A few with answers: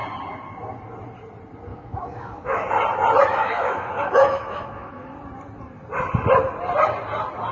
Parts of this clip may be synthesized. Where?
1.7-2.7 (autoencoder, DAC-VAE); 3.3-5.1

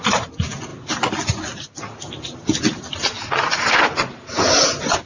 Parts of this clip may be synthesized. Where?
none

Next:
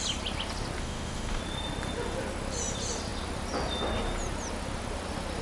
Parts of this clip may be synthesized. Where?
0.8-1.4 (autoencoder, DAC-VAE)